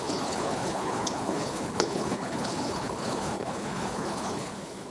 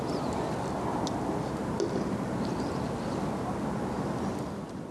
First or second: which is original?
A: second